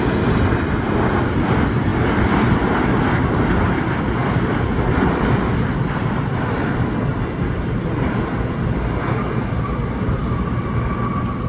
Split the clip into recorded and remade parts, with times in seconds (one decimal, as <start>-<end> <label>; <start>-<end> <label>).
0.0-11.5 recorded